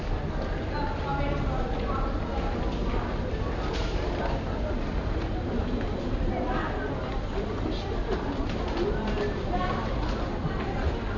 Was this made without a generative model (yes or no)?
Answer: yes